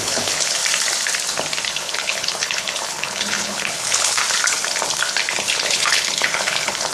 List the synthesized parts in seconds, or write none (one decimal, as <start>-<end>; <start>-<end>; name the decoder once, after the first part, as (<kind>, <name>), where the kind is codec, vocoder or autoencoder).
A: 0.0-0.6 (codec, HILCodec); 1.7-4.2; 5.4-6.9